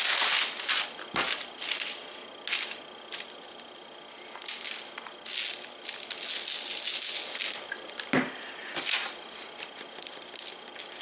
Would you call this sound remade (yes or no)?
no